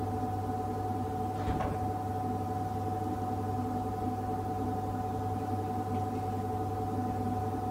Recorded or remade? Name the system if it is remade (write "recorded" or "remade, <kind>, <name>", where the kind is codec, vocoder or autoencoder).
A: recorded